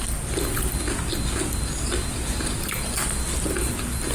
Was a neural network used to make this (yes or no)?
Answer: no